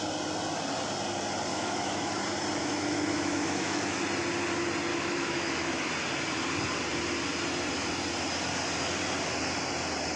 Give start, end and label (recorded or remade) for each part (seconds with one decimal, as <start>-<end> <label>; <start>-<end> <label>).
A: 0.0-1.5 recorded; 1.5-2.2 remade; 2.2-2.6 recorded; 2.6-4.0 remade; 4.0-4.9 recorded; 4.9-5.9 remade; 5.9-10.2 recorded